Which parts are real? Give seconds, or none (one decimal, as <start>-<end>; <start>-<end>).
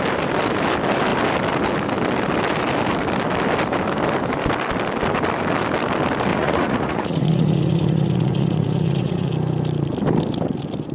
0.0-6.3; 9.3-10.9